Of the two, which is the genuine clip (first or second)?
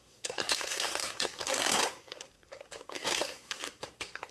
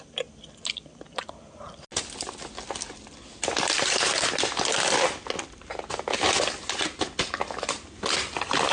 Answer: second